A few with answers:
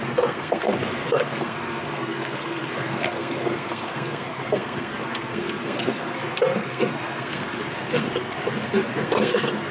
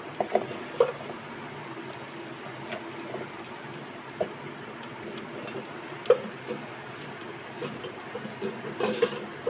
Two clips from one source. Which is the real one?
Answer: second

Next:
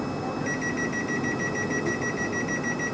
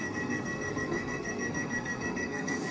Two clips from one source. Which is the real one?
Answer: first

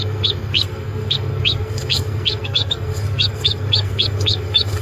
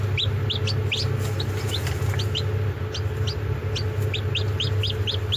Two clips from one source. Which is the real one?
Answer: second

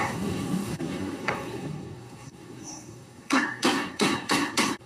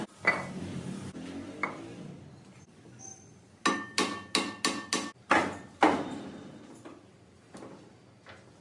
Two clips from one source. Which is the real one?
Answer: second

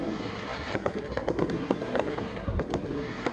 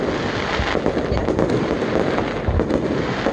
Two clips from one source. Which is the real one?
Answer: second